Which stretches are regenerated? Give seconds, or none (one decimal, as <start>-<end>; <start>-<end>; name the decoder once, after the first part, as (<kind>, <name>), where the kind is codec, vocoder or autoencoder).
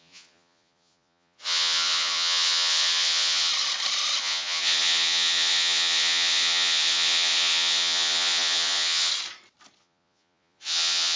0.0-3.5 (vocoder, Vocos); 4.2-9.1; 9.8-11.2